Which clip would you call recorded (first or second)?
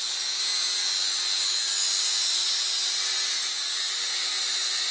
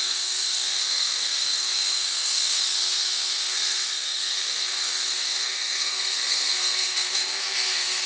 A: first